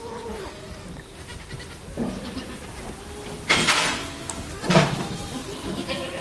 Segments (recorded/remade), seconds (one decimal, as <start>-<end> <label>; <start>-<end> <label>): 0.0-1.3 recorded; 1.3-2.4 remade; 2.4-4.6 recorded; 4.6-5.5 remade; 5.5-6.2 recorded